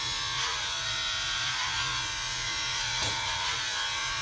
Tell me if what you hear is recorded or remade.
remade